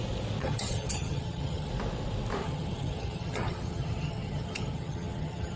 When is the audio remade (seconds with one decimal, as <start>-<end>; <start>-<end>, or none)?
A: 0.4-1.7; 2.4-5.6